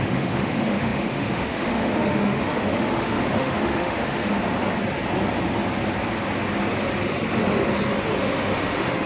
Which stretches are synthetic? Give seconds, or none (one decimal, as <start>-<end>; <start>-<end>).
0.0-4.3; 7.9-9.1